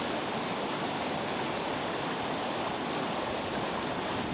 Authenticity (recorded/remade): recorded